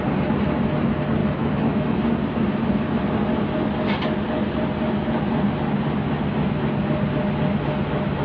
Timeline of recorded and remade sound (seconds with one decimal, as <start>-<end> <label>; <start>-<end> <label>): 0.0-1.2 recorded; 1.2-2.0 remade; 2.0-8.2 recorded